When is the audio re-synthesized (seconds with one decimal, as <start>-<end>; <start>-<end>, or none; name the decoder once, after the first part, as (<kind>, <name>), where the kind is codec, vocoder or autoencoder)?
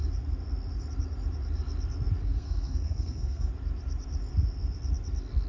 2.2-3.5 (codec, SNAC)